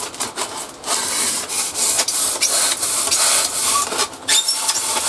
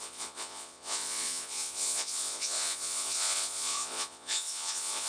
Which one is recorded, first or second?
first